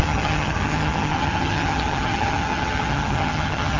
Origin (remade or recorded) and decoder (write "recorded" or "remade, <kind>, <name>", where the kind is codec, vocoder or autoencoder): remade, vocoder, HiFi-GAN